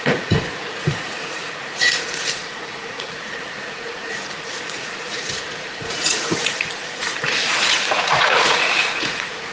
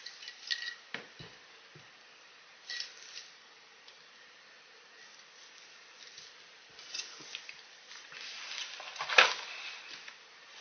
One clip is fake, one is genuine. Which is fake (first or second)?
first